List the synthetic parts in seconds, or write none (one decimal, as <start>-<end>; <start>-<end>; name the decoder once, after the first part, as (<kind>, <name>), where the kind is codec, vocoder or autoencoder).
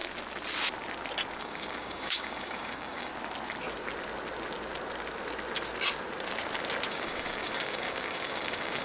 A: 1.4-3.1 (codec, DAC); 6.9-8.8